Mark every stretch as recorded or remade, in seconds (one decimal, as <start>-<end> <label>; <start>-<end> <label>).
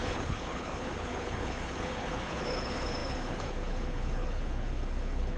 0.0-5.4 remade